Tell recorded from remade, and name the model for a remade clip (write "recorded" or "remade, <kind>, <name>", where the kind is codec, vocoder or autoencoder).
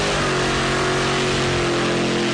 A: recorded